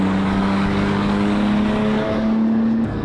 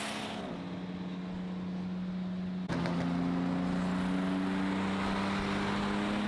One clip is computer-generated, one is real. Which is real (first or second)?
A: second